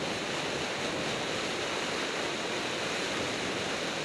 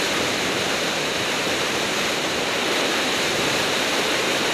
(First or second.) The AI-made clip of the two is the second